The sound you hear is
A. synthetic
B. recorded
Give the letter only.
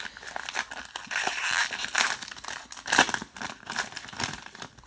B